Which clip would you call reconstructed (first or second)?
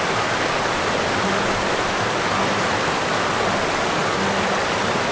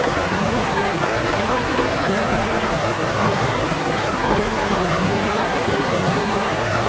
second